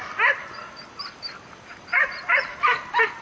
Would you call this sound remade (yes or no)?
no